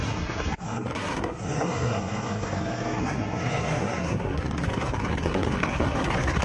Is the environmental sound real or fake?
fake